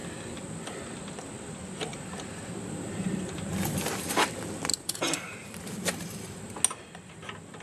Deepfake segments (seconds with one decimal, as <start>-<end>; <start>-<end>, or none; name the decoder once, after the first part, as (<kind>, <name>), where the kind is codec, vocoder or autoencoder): 1.9-3.5 (vocoder, BigVGAN v2); 4.7-5.6